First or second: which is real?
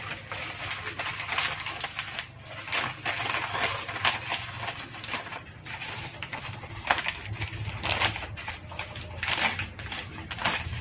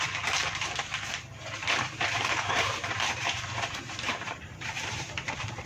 first